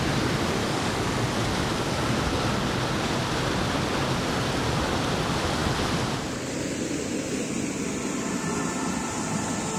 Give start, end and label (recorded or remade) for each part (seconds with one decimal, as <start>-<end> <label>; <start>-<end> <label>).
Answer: 0.0-0.6 recorded; 0.6-1.2 remade; 1.2-9.8 recorded